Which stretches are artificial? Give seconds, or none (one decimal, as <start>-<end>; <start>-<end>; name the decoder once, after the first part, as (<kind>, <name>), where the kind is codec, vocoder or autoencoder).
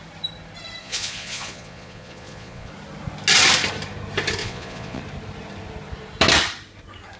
0.8-2.7 (vocoder, Vocos); 4.4-5.0